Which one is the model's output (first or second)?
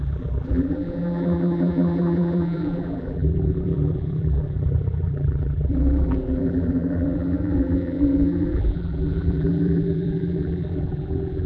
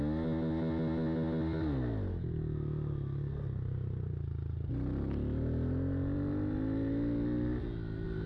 first